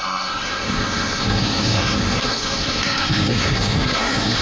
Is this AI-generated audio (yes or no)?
yes